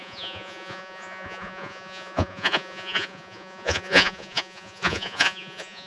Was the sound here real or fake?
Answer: fake